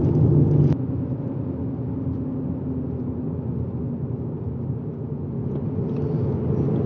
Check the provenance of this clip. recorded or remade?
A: recorded